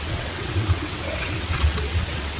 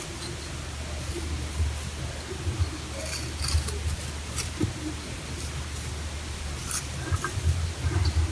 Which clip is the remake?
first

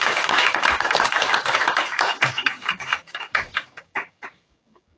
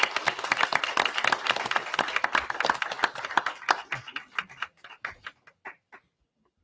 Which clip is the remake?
first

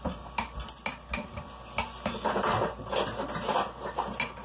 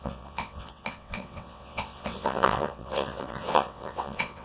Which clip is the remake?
second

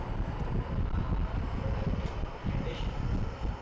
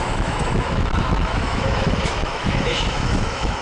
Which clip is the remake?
second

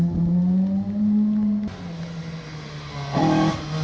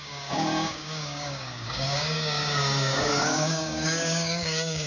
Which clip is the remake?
second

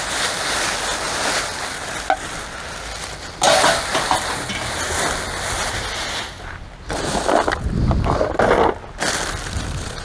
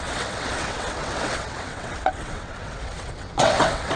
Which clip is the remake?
second